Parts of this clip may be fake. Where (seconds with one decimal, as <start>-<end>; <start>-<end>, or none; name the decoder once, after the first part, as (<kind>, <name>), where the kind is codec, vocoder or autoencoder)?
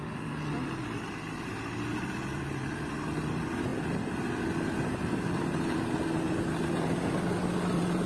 none